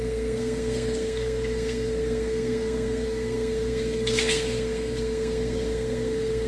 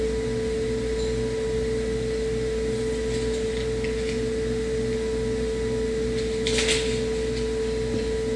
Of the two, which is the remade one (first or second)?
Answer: first